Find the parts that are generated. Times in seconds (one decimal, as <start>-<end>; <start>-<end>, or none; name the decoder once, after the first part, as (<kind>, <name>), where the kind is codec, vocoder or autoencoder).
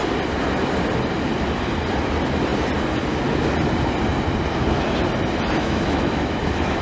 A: 5.6-6.8 (autoencoder, DAC-VAE)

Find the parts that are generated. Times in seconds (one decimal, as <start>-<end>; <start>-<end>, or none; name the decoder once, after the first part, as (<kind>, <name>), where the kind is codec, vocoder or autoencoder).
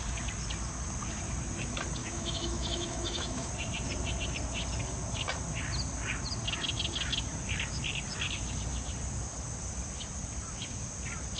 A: 2.0-3.5 (autoencoder, DAC-VAE)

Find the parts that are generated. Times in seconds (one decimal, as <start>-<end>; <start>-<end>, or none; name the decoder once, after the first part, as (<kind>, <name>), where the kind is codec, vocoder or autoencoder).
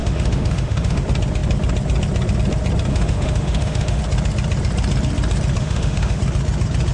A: 0.0-1.0 (autoencoder, DAC-VAE); 2.9-4.0; 5.6-6.2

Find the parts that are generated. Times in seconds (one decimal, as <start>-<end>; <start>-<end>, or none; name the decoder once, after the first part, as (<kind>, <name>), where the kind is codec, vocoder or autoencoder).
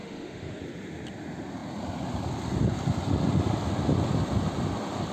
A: 0.0-0.6 (autoencoder, DAC-VAE)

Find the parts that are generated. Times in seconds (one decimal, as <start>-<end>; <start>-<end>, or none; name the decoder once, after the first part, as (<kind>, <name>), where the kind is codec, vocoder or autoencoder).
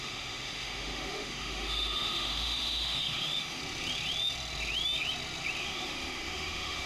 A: 0.0-3.6 (autoencoder, DAC-VAE); 5.6-6.9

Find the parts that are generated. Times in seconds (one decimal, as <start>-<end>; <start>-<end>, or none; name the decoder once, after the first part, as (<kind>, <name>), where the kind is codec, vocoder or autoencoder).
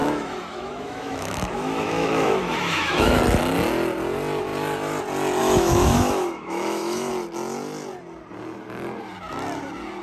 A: 0.0-3.2 (autoencoder, DAC-VAE); 5.4-7.1